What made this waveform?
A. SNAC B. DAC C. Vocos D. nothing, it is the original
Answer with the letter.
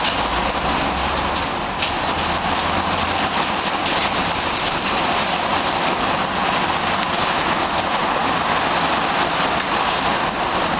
D